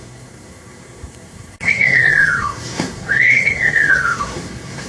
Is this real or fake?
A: fake